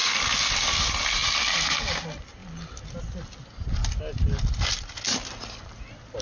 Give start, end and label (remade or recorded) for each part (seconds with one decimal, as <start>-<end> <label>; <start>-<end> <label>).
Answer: 0.0-6.2 recorded